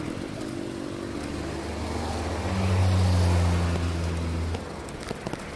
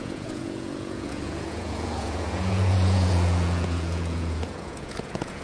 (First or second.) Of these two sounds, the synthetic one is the second